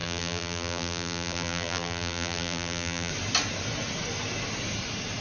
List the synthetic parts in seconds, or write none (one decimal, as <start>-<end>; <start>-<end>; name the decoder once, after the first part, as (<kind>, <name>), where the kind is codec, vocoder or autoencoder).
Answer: 0.0-3.1 (vocoder, BigVGAN v2)